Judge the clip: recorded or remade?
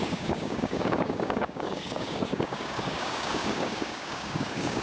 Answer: remade